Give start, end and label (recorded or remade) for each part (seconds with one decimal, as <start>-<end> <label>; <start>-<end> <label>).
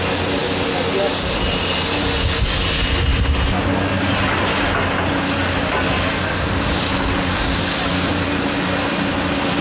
0.0-9.6 recorded